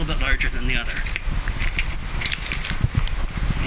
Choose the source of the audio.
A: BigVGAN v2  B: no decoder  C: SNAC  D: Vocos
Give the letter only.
A